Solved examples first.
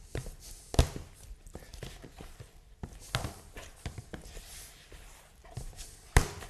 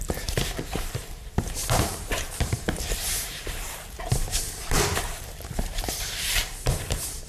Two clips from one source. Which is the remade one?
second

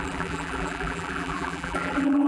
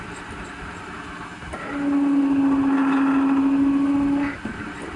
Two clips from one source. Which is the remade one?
first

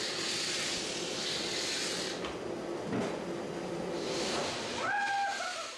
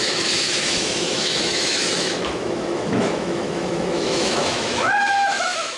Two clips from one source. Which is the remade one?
second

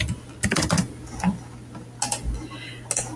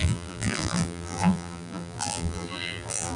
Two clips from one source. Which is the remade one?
second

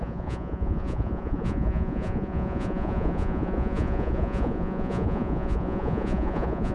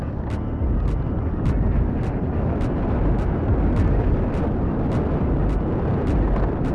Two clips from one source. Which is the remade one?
first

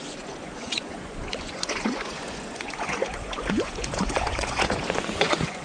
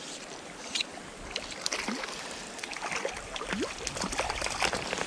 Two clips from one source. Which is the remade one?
first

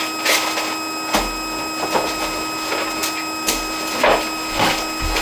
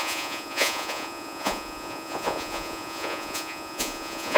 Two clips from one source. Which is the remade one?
second